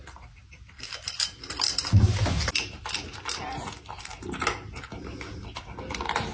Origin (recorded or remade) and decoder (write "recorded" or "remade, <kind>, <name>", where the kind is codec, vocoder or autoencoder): recorded